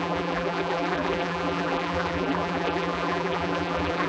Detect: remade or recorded remade